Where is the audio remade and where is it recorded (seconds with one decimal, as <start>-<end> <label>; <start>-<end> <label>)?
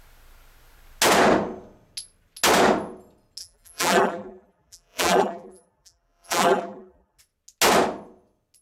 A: 0.0-3.4 recorded; 3.4-7.2 remade; 7.2-8.6 recorded